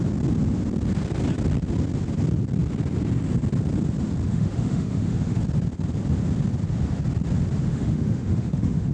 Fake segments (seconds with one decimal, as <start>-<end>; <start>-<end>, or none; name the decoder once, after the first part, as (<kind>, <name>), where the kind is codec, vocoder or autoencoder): 4.3-5.4 (autoencoder, DAC-VAE); 7.7-8.9